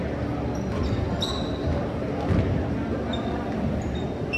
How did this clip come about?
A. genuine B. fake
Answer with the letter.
A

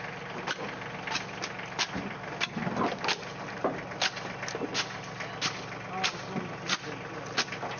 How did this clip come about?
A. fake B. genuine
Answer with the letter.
B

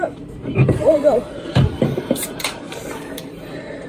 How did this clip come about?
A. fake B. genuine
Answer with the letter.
A